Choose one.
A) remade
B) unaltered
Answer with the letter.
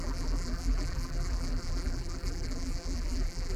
A